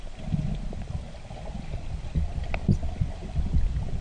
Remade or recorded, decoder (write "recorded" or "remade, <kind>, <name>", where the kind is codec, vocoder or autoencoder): recorded